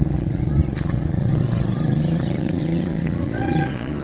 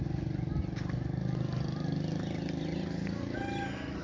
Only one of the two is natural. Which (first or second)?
second